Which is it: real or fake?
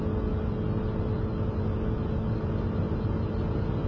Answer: real